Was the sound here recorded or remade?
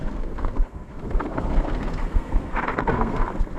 remade